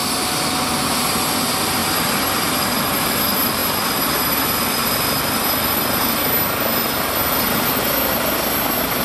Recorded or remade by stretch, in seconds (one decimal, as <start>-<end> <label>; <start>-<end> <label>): 0.0-9.0 recorded